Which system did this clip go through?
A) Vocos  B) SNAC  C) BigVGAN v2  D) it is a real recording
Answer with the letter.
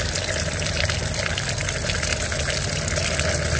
D